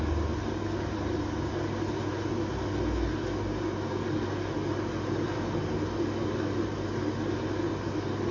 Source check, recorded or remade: recorded